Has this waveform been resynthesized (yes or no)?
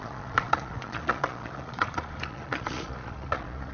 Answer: yes